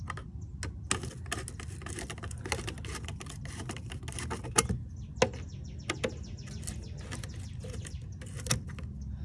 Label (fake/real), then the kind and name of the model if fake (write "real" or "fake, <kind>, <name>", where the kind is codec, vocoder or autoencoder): real